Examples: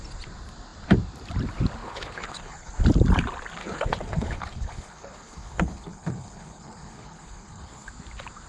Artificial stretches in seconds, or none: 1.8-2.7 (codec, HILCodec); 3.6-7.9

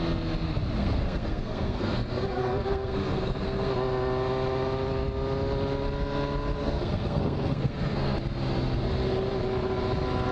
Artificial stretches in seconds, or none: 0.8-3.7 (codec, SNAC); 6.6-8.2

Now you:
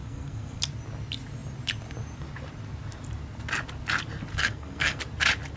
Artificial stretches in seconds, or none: 0.0-0.6 (codec, SNAC); 4.3-5.0